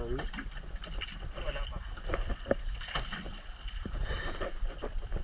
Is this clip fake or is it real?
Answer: real